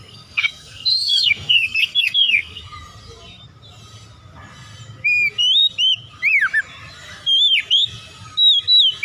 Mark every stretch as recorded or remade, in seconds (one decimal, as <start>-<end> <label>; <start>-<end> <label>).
0.0-2.6 remade; 2.6-9.0 recorded